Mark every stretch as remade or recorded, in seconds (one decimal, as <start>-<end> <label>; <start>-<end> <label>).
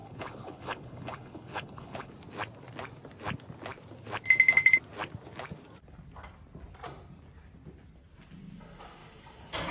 0.0-2.1 remade; 2.1-9.7 recorded